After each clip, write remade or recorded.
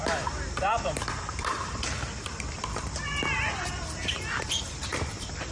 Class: remade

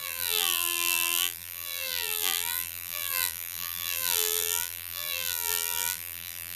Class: remade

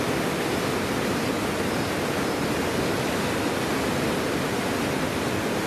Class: recorded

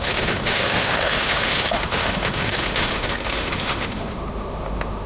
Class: remade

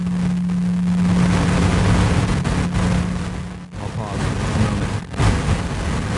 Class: recorded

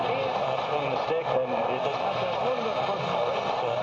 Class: remade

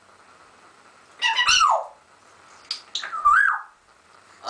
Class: recorded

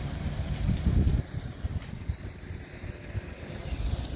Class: recorded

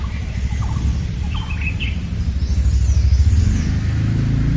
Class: recorded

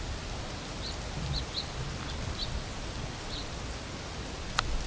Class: recorded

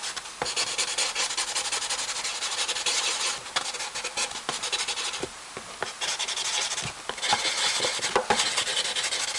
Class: recorded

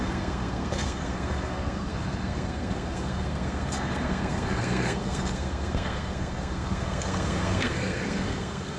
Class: remade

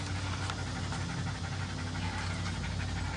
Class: recorded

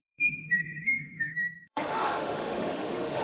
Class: remade